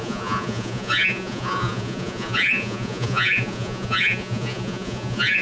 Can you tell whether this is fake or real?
fake